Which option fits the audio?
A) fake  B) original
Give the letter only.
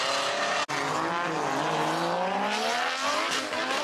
B